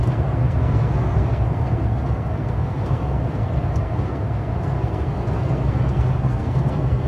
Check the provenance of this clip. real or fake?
fake